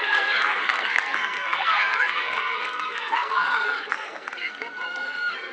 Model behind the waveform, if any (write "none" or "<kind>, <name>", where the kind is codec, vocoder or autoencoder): codec, SNAC